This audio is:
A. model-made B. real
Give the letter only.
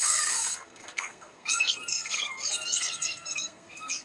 A